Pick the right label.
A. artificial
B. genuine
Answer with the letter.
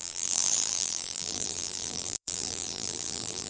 A